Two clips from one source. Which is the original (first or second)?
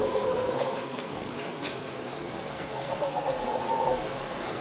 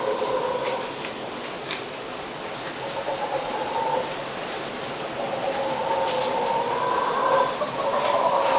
second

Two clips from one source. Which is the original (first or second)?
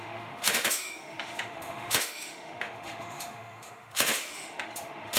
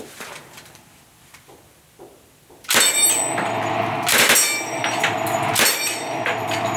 second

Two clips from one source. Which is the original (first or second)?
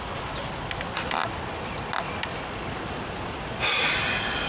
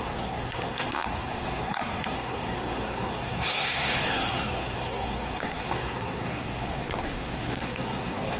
first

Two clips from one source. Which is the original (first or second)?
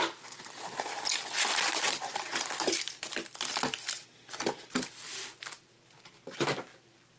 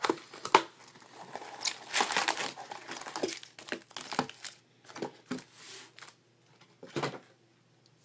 second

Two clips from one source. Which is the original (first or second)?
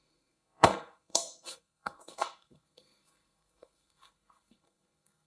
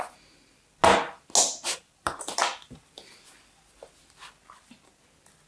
second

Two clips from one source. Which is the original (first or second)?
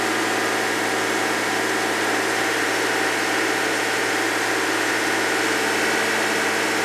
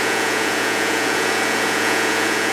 first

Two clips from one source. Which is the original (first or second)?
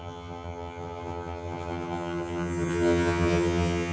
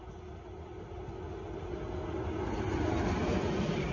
second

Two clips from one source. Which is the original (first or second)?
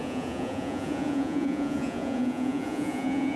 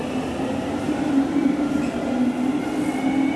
second